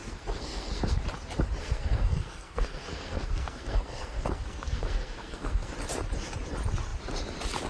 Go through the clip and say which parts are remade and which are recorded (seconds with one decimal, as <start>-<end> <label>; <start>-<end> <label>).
0.0-1.0 remade; 1.0-1.6 recorded; 1.6-5.7 remade; 5.7-7.7 recorded